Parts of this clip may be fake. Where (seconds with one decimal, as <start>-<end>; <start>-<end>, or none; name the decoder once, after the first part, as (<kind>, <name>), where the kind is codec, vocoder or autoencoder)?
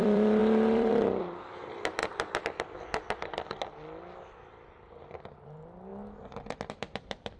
0.0-2.0 (vocoder, BigVGAN v2); 5.2-5.9; 6.7-7.4